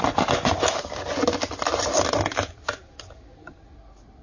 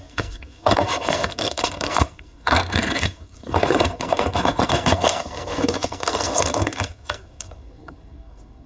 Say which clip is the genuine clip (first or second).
first